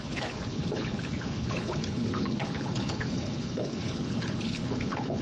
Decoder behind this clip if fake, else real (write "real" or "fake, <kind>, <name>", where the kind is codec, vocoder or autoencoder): fake, codec, HILCodec